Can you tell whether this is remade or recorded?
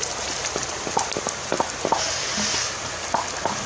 recorded